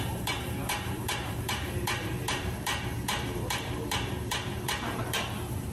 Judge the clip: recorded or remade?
remade